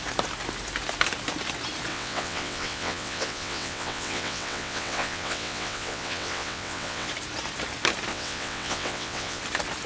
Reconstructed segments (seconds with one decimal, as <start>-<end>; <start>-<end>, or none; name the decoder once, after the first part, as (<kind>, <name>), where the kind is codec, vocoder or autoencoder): 1.9-7.1 (vocoder, WaveNeXt); 8.1-9.4